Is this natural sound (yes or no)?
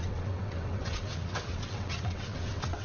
no